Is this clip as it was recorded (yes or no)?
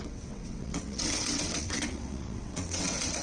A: no